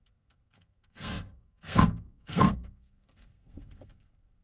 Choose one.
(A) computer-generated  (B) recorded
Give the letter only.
A